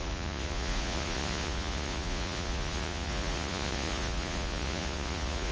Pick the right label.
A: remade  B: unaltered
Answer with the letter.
A